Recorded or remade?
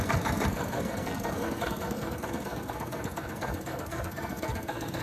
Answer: remade